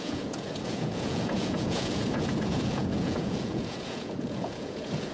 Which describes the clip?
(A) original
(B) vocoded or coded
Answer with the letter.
B